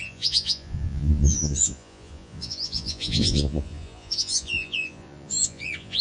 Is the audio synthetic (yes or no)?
yes